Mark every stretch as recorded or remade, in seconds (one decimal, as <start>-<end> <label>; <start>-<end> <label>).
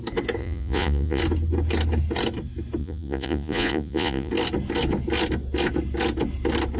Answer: 0.0-0.4 recorded; 0.4-1.2 remade; 1.2-2.8 recorded; 2.8-4.3 remade; 4.3-6.8 recorded